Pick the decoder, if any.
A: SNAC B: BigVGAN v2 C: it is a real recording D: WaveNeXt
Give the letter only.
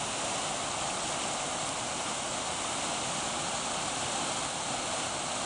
C